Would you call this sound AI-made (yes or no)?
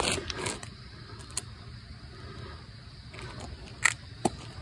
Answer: no